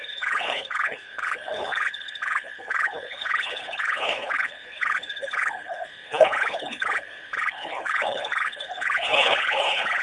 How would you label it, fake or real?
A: fake